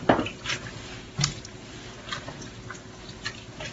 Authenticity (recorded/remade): recorded